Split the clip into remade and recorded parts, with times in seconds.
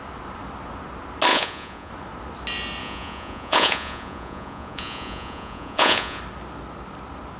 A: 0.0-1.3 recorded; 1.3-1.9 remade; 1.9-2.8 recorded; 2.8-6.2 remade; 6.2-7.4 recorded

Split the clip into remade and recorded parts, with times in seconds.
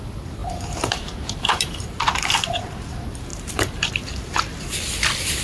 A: 0.0-0.4 recorded; 0.4-2.0 remade; 2.0-3.3 recorded; 3.3-3.9 remade; 3.9-5.4 recorded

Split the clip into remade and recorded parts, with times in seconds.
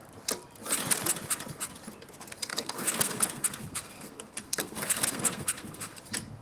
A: 0.0-2.5 recorded; 2.5-6.0 remade; 6.0-6.4 recorded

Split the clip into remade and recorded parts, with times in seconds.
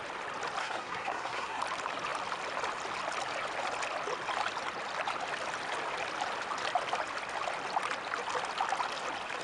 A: 0.0-0.6 recorded; 0.6-1.6 remade; 1.6-9.4 recorded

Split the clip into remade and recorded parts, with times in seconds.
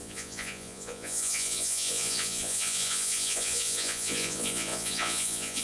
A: 0.0-5.6 remade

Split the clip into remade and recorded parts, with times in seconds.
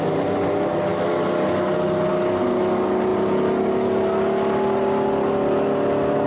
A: 0.0-6.3 recorded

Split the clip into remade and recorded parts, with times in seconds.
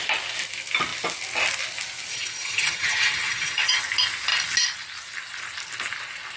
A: 0.0-2.1 recorded; 2.1-3.8 remade; 3.8-6.4 recorded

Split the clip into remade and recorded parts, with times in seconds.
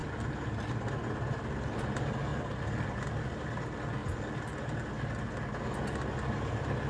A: 0.0-6.9 recorded